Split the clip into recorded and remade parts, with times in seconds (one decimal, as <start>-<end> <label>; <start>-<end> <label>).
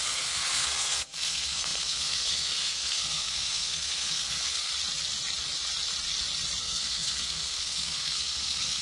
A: 0.0-4.7 remade; 4.7-6.6 recorded; 6.6-8.8 remade